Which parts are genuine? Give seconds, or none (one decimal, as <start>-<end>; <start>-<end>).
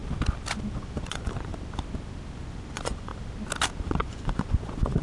0.0-0.7; 1.5-2.4; 3.1-3.8